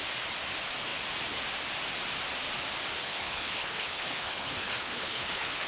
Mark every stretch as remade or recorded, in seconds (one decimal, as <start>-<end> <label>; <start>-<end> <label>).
0.0-3.0 recorded; 3.0-5.7 remade